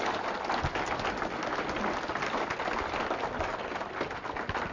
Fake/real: real